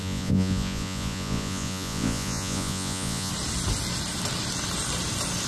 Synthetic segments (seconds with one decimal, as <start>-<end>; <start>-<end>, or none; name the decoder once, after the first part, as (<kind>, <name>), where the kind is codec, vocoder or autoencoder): 0.0-3.3 (vocoder, Vocos)